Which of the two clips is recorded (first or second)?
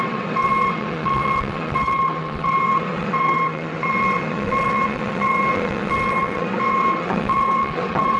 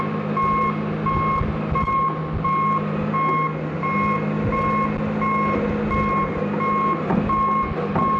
second